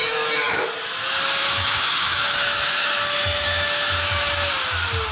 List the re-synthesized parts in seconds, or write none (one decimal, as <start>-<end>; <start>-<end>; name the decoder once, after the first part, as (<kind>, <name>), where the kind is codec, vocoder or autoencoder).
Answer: 0.0-0.7 (autoencoder, DAC-VAE); 1.4-4.5